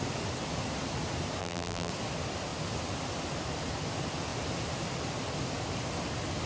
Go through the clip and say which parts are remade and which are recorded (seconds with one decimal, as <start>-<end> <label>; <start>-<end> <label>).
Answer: 0.0-1.4 recorded; 1.4-1.9 remade; 1.9-6.5 recorded